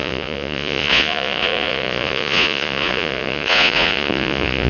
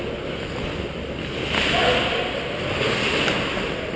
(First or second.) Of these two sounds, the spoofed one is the first